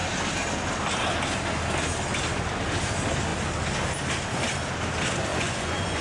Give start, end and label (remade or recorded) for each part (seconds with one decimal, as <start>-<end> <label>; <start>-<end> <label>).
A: 0.0-5.3 recorded; 5.3-6.0 remade